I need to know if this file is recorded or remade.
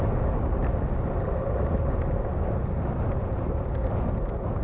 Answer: recorded